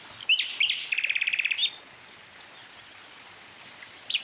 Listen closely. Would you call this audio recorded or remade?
recorded